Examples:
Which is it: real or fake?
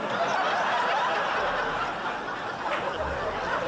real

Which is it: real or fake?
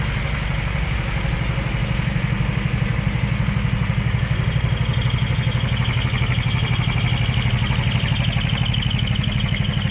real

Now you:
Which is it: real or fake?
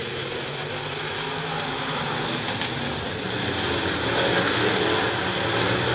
real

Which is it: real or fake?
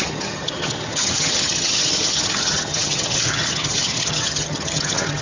fake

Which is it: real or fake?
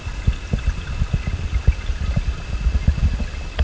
real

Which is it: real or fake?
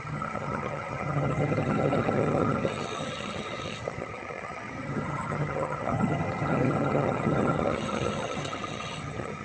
fake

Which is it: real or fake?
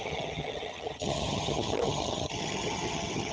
fake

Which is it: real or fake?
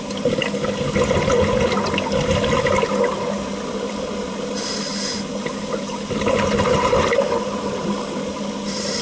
real